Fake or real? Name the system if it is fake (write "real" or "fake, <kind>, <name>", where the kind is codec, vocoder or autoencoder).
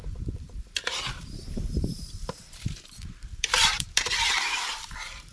fake, vocoder, BigVGAN v2